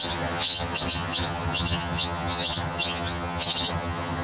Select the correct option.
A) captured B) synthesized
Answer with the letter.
B